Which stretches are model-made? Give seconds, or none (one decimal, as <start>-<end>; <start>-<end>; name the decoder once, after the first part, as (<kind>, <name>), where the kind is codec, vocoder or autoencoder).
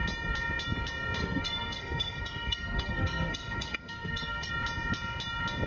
1.2-4.5 (codec, SNAC)